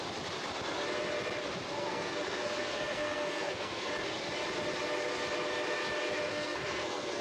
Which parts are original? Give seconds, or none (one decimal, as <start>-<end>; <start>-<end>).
0.0-1.8; 3.9-6.3